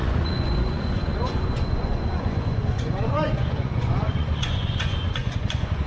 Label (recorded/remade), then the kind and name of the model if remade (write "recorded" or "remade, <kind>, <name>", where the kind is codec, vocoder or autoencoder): remade, vocoder, Vocos